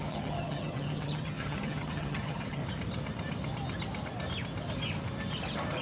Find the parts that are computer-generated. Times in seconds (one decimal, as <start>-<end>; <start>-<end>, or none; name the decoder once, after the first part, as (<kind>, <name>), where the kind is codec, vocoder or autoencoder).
0.0-2.6 (vocoder, HiFi-GAN)